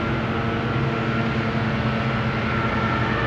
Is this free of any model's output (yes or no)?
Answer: yes